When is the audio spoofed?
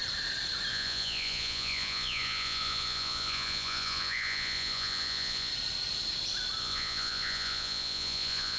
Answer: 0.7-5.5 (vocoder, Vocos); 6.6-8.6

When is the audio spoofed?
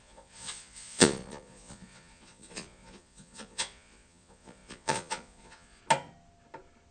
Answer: 0.0-5.8 (vocoder, Vocos)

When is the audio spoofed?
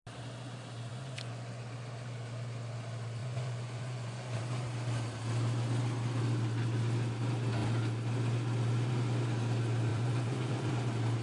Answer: 0.9-1.6 (vocoder, Vocos); 3.2-4.4; 9.9-10.7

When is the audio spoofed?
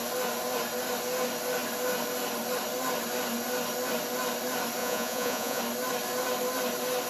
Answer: 4.8-5.6 (vocoder, Vocos)